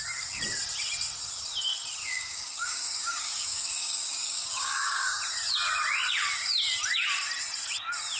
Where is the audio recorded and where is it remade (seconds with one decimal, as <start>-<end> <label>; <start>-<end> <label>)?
0.0-2.0 recorded; 2.0-5.2 remade; 5.2-8.2 recorded